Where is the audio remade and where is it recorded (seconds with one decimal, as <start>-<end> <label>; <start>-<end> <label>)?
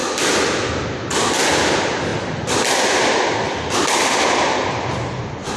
0.0-5.6 remade